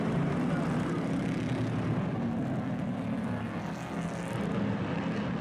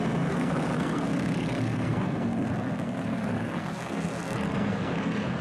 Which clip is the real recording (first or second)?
first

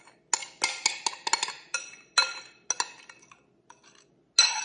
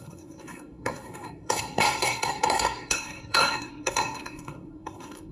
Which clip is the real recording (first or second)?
first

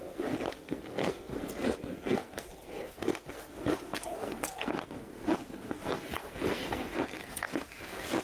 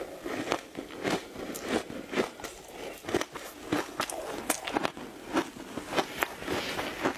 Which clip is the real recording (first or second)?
second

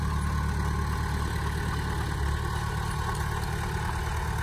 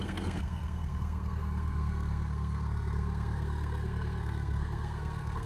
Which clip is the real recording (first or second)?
first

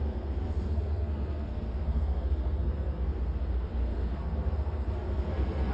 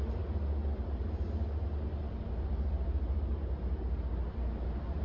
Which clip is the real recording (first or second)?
second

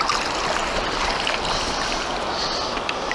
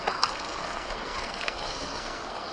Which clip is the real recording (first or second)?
first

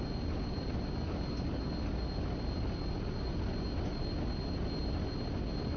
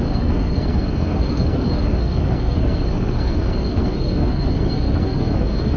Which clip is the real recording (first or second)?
first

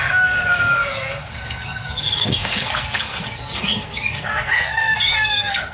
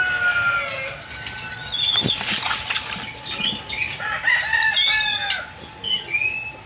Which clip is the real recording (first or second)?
second